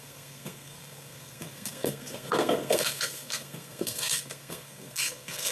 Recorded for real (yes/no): no